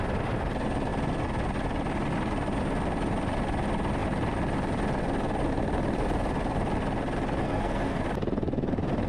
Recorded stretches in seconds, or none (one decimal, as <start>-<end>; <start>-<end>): 0.0-7.4; 8.0-9.1

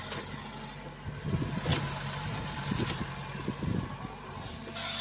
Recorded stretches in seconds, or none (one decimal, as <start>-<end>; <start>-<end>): 0.0-1.7; 3.0-5.0

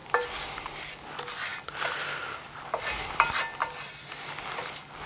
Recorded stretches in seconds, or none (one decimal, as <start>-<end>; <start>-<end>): 0.0-5.1

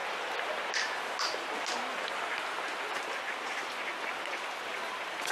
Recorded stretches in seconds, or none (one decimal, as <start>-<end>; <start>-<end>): 0.0-5.3

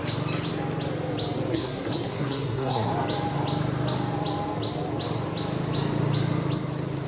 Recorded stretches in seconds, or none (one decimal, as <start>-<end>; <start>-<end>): 0.0-1.5; 2.9-7.1

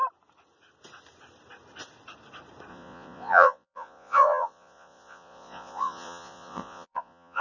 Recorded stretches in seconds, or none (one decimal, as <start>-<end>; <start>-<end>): 0.0-2.7

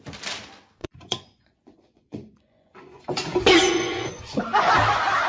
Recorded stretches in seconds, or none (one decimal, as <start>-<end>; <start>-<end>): 0.0-0.8; 3.0-3.6; 4.4-5.3

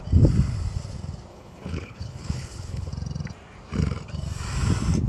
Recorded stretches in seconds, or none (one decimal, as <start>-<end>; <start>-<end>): 0.0-1.3; 2.9-5.1